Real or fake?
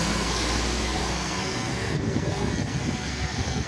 fake